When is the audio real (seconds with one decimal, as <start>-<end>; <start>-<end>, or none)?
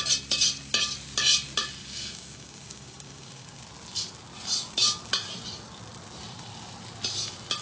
0.0-1.8; 3.6-7.6